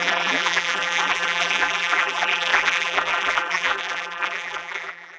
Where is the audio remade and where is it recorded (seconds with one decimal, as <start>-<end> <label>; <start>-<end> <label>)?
0.0-5.2 remade